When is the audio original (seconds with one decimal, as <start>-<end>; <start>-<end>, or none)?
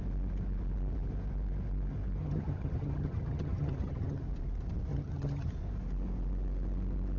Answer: 0.0-2.2; 4.2-4.9; 5.5-7.2